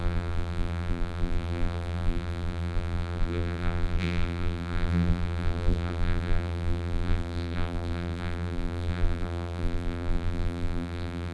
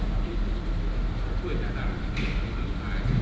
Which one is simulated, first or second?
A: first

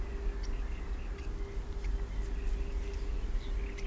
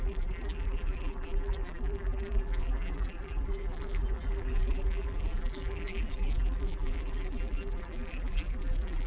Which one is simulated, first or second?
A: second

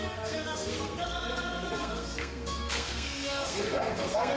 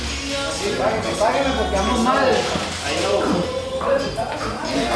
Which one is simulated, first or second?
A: first